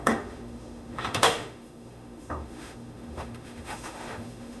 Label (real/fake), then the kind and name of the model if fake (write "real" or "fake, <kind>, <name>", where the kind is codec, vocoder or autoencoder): fake, autoencoder, DAC-VAE